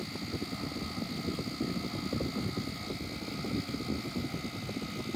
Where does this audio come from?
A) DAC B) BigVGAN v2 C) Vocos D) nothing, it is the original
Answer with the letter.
D